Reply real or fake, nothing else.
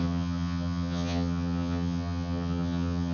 fake